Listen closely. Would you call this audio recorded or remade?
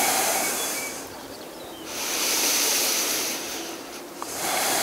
remade